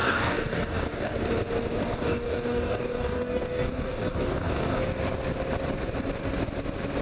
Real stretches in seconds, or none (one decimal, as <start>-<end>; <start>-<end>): 1.1-1.8; 4.8-7.0